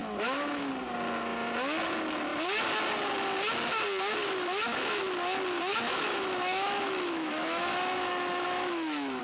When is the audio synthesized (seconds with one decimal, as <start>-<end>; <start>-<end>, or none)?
0.0-0.7; 4.2-5.0; 5.7-9.2